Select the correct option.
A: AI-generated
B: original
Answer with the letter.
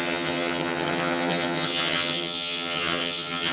A